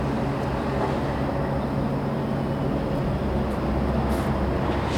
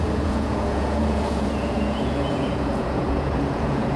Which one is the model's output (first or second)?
second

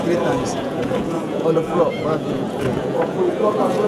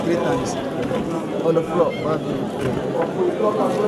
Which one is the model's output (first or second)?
first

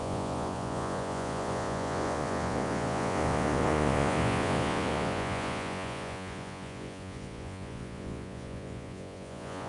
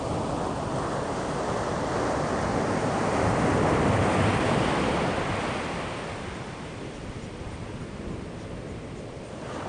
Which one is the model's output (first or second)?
first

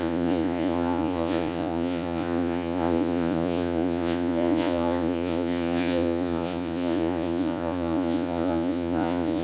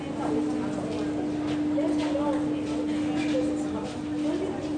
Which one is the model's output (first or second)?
first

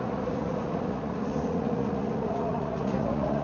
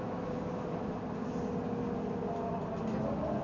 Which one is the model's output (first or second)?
first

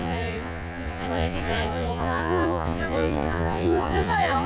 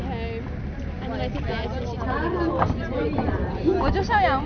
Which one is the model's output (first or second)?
first